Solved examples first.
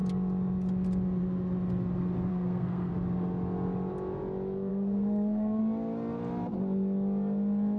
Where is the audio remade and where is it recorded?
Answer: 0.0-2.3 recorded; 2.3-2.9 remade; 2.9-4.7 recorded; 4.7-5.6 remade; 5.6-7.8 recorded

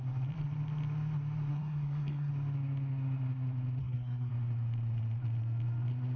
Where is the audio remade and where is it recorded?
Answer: 0.0-1.5 recorded; 1.5-2.3 remade; 2.3-3.8 recorded; 3.8-4.3 remade; 4.3-6.2 recorded

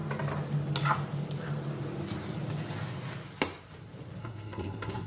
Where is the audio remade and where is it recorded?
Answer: 0.0-4.2 recorded; 4.2-5.1 remade

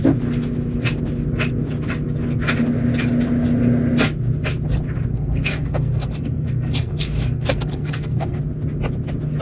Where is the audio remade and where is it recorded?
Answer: 0.0-5.1 recorded; 5.1-8.4 remade; 8.4-9.4 recorded

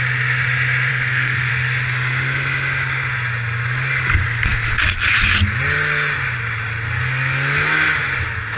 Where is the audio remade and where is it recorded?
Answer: 0.0-0.9 recorded; 0.9-1.5 remade; 1.5-8.6 recorded